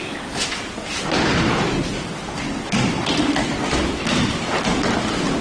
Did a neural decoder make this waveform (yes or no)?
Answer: no